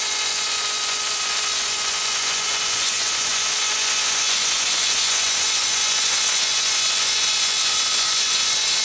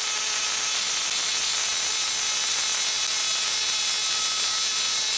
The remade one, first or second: first